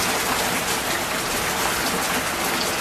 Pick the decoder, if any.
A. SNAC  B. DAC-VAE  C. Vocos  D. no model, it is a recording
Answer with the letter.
D